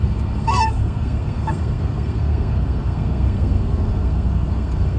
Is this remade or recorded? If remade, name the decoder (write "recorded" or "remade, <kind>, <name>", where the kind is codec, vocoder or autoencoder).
remade, codec, SNAC